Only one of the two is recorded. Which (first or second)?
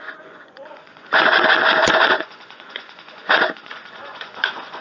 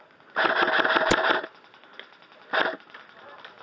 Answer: second